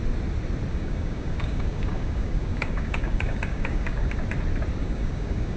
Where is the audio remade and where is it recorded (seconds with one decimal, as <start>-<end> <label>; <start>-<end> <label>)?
0.0-0.7 recorded; 0.7-4.1 remade; 4.1-4.8 recorded; 4.8-5.6 remade